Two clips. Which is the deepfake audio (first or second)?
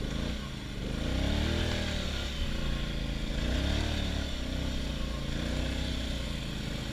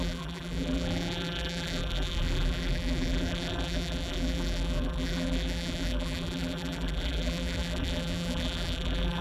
second